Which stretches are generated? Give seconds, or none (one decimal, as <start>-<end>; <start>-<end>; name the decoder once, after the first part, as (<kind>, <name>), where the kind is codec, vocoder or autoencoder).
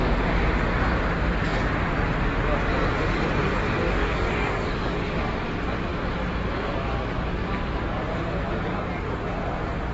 4.0-5.1 (codec, DAC); 8.6-9.2